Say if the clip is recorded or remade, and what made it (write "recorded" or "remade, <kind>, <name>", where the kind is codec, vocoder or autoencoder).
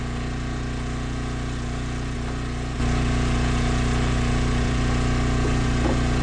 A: recorded